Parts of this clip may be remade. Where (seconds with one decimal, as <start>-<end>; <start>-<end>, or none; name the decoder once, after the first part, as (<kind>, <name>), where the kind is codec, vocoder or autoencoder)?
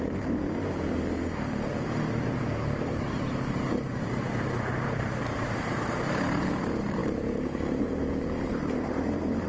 0.0-9.5 (vocoder, BigVGAN v2)